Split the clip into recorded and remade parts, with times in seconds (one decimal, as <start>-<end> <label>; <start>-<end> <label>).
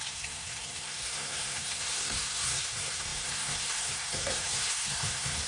0.0-5.5 remade